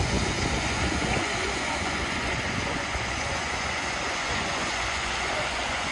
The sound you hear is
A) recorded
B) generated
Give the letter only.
B